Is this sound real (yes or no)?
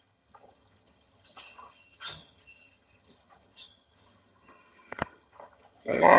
no